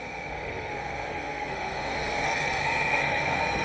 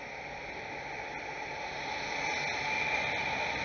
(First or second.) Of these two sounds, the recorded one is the second